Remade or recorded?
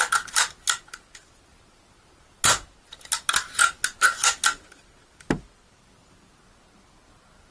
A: recorded